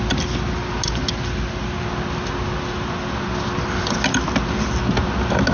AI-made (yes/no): no